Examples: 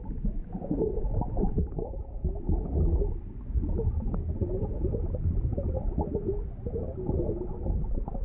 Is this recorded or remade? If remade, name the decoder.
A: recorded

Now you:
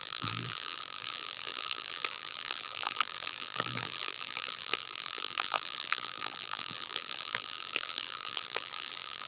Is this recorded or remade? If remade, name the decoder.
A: remade, vocoder, BigVGAN v2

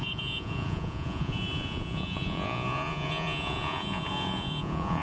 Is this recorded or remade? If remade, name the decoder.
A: remade, vocoder, Vocos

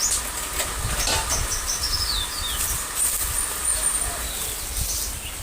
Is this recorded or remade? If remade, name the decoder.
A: recorded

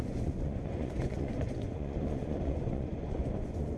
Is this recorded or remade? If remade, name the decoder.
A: remade, vocoder, Vocos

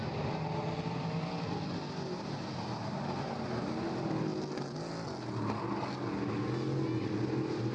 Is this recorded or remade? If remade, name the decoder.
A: recorded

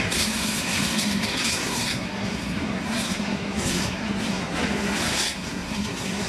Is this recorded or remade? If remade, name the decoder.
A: remade, codec, SNAC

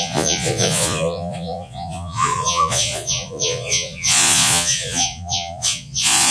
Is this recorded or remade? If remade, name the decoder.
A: remade, vocoder, Vocos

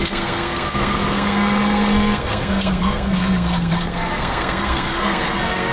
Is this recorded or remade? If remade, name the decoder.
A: remade, codec, SNAC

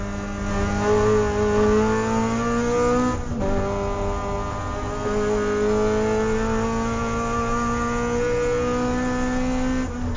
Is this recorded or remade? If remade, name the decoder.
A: recorded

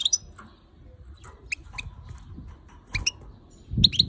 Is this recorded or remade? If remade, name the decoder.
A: recorded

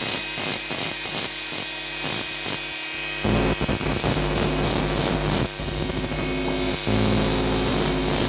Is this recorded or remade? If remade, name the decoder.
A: recorded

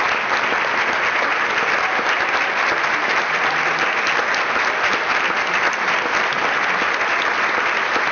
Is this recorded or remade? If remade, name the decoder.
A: recorded